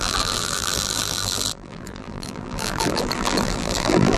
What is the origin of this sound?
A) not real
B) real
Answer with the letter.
A